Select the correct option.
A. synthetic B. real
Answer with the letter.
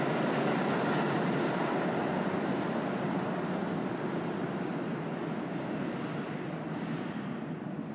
B